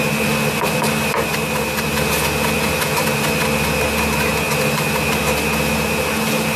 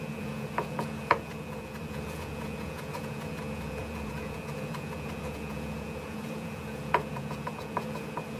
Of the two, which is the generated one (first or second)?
second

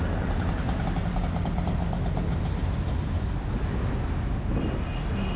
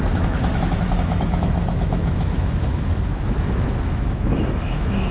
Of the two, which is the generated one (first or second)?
second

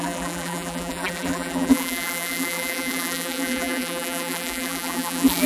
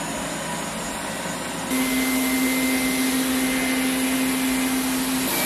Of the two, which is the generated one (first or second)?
first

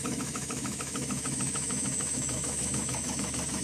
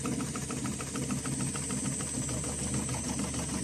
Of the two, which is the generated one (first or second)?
first